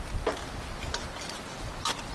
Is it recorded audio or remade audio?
recorded